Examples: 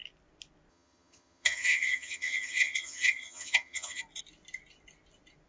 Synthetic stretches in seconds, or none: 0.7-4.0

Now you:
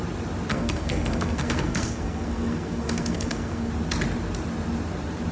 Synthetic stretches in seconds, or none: 0.5-3.7

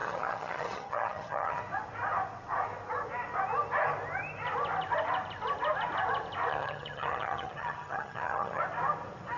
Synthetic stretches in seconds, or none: 0.0-1.6; 6.5-8.6

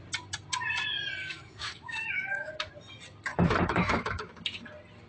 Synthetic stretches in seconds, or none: 1.2-2.5; 3.3-4.4